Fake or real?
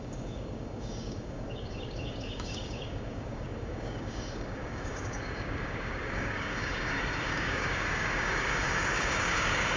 fake